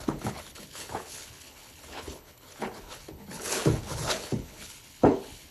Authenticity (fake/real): fake